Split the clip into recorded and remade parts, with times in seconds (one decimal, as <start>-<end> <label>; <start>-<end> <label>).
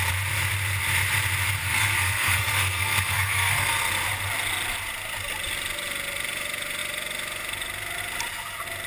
0.0-1.6 recorded; 1.6-3.9 remade; 3.9-8.9 recorded